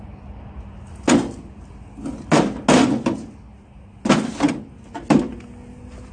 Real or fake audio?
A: real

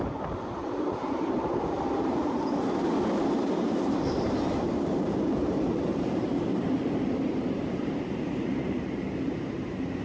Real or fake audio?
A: fake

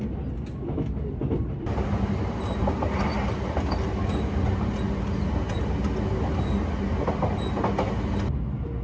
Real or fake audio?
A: real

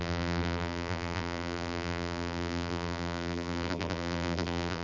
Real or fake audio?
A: fake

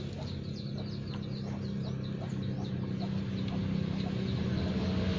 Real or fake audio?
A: real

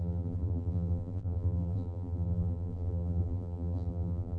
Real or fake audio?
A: fake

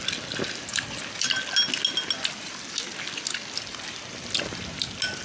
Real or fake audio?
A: real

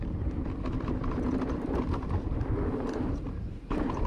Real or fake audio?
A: fake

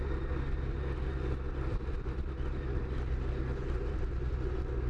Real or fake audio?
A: real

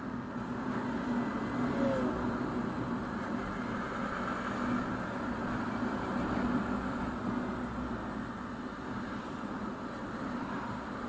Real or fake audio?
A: real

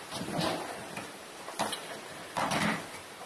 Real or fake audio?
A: fake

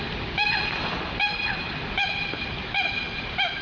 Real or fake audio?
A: fake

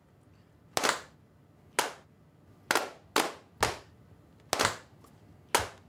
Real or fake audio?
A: real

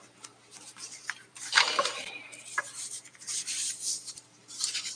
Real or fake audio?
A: fake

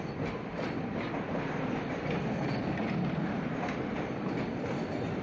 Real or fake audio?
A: fake